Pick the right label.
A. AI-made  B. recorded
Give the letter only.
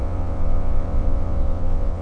A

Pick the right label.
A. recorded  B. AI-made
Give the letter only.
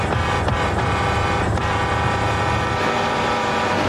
B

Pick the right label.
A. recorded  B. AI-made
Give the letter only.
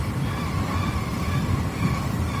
A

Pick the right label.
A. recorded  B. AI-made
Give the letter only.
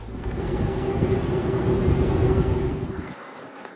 B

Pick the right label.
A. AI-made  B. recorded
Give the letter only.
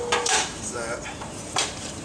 A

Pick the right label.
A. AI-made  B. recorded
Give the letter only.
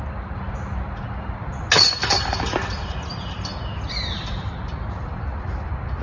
B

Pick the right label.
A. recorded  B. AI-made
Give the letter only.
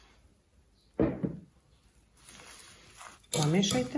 A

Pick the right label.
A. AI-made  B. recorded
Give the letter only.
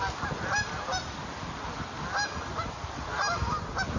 B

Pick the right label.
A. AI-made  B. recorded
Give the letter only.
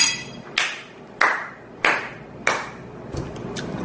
B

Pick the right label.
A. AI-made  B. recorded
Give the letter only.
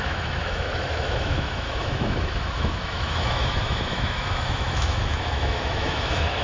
A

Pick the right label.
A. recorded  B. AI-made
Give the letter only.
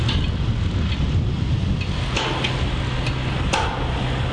A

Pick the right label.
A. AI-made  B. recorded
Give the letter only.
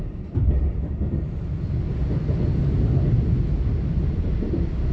B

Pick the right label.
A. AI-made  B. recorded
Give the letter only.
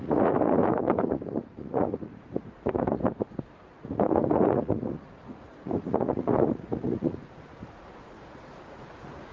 A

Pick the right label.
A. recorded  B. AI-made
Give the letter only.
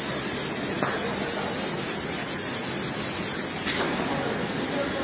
A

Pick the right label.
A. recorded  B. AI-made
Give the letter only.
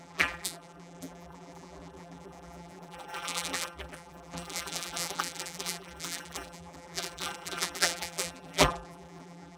B